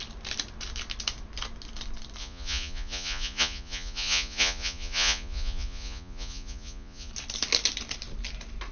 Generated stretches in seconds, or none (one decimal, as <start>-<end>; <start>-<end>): 2.2-7.1